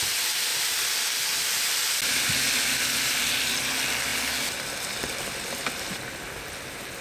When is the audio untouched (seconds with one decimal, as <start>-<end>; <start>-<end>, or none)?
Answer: 0.0-7.0